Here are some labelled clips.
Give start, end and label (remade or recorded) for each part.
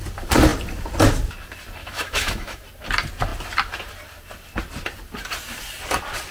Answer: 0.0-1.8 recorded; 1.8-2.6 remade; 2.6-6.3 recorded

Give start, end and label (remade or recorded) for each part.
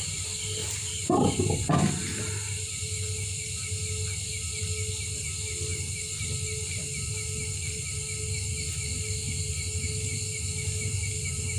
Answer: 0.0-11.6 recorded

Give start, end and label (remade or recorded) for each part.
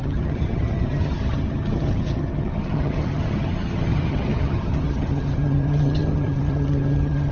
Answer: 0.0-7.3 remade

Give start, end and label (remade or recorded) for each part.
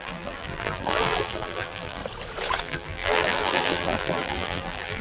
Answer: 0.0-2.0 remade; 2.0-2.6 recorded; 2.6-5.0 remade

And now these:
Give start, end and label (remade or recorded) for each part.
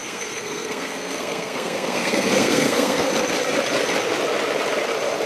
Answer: 0.0-3.1 remade; 3.1-5.3 recorded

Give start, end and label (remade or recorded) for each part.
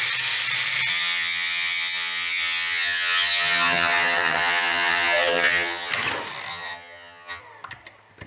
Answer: 0.0-0.9 recorded; 0.9-5.9 remade; 5.9-6.5 recorded; 6.5-7.4 remade; 7.4-8.3 recorded